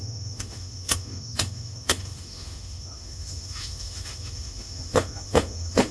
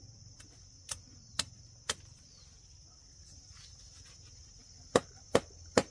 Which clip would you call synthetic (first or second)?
first